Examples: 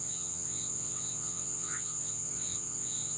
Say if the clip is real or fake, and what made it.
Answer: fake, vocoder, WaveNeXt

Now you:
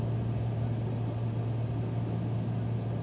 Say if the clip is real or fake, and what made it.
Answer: real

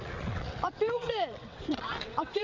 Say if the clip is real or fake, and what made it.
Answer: fake, vocoder, WaveNeXt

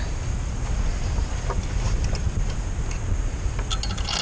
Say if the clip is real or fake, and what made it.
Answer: real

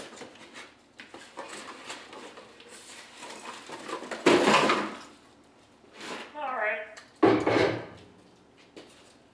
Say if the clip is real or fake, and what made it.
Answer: real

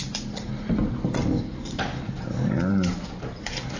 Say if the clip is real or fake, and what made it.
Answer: real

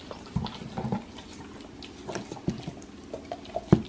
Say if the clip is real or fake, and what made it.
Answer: real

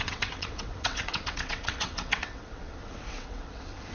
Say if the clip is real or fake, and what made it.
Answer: fake, vocoder, WaveNeXt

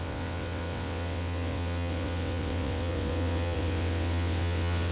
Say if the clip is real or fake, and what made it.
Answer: fake, vocoder, WaveNeXt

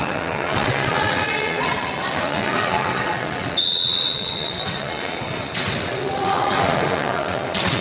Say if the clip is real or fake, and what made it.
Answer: fake, vocoder, WaveNeXt